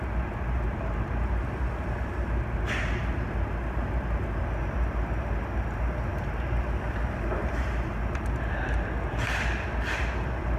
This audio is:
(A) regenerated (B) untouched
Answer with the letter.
B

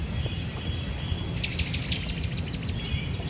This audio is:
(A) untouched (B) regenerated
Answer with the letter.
A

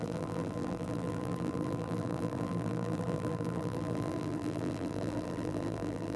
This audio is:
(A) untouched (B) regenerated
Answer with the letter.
B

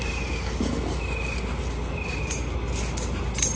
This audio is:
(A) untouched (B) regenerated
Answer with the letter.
A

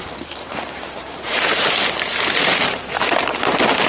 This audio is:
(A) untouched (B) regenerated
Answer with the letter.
B